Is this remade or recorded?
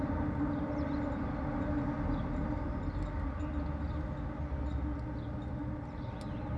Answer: recorded